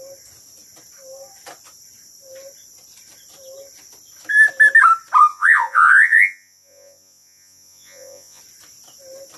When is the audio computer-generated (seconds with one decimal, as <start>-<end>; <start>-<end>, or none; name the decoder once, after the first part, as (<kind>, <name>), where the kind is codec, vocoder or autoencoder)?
5.3-8.4 (vocoder, Vocos)